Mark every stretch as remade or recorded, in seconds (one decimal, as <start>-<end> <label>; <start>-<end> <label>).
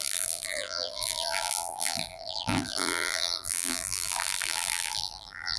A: 0.0-5.6 remade